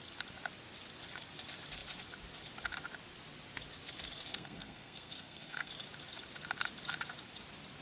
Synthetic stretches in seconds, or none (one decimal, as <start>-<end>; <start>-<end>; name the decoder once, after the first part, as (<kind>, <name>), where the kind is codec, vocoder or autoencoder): 4.3-5.7 (codec, SNAC)